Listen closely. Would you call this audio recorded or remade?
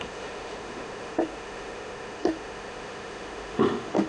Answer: remade